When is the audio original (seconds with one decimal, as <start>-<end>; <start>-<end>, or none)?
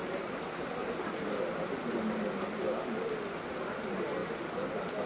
3.1-5.1